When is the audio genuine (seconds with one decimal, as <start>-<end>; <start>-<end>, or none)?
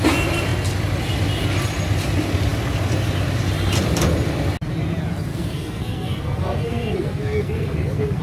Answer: 0.0-5.3